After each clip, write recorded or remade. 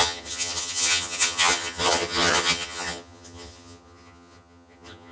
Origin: remade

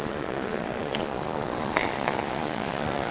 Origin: remade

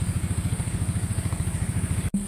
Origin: remade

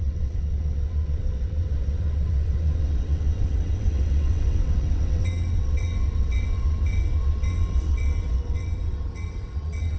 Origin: remade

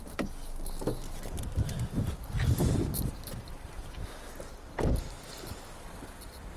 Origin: recorded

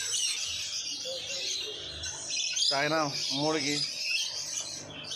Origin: remade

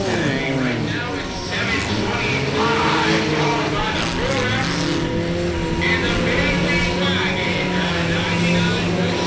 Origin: recorded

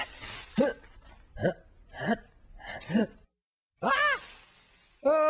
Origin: recorded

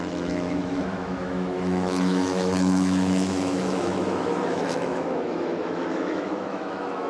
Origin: remade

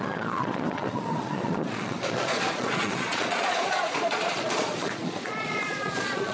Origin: remade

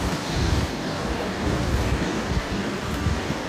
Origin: remade